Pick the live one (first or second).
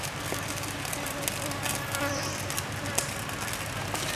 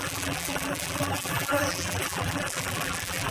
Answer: first